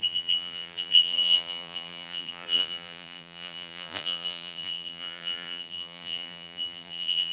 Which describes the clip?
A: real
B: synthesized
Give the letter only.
B